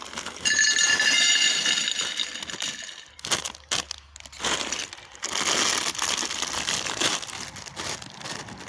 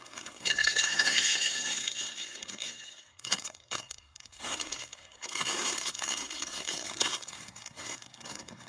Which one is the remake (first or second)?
second